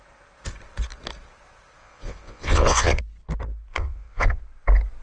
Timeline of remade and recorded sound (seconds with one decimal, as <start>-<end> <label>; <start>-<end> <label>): 0.0-1.8 recorded; 1.8-3.0 remade; 3.0-3.7 recorded; 3.7-4.4 remade; 4.4-5.0 recorded